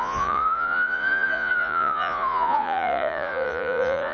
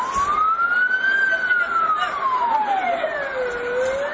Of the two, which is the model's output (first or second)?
first